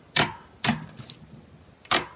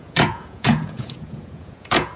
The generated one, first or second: second